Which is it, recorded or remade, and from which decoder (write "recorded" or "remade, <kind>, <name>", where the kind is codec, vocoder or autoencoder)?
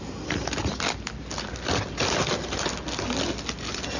recorded